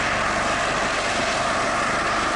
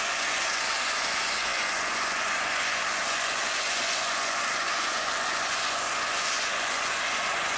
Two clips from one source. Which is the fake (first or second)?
second